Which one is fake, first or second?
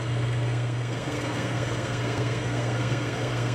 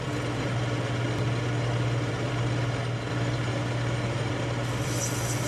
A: first